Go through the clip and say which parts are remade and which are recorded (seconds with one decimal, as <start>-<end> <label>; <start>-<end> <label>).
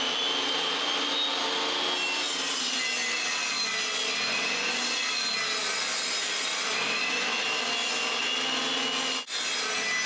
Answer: 0.0-5.6 recorded; 5.6-7.0 remade; 7.0-10.1 recorded